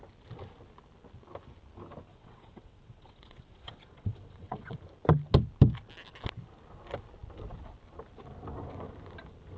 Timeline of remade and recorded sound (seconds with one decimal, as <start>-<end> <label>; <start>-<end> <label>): 0.0-2.1 recorded; 2.1-4.8 remade; 4.8-9.6 recorded